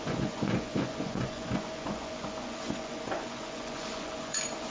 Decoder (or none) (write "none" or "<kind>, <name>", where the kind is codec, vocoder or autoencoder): vocoder, Vocos